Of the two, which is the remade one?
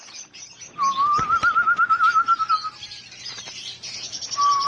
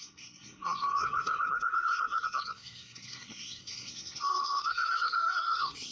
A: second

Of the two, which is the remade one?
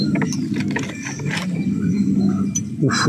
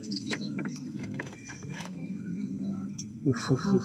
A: second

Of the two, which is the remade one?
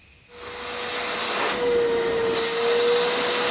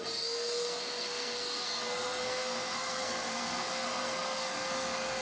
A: second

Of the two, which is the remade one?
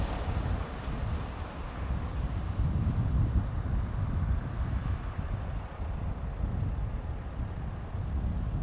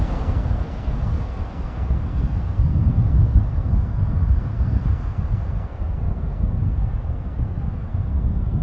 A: second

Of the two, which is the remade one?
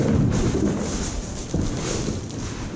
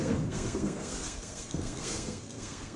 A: second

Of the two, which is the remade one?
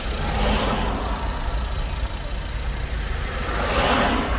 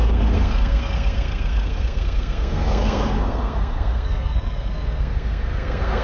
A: second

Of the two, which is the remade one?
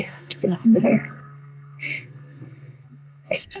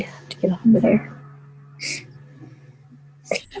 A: first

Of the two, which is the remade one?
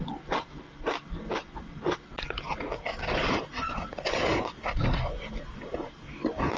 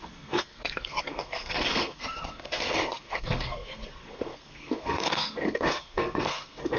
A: second